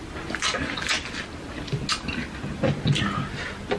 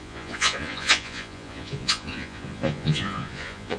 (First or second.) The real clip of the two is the first